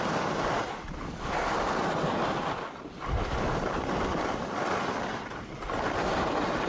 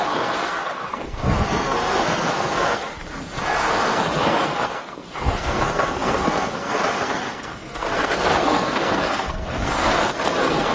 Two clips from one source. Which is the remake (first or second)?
second